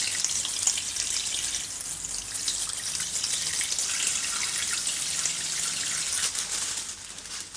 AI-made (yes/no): no